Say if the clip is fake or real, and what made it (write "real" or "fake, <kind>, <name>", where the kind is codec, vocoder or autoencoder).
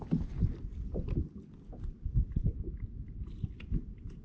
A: real